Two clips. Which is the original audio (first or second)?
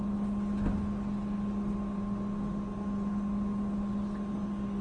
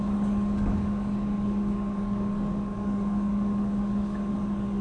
first